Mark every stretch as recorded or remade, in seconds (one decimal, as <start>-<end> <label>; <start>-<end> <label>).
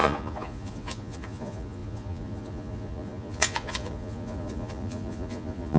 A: 0.0-5.8 remade